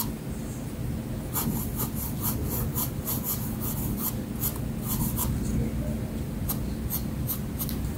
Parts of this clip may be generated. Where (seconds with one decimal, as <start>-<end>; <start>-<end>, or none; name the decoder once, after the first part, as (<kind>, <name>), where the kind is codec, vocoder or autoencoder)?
none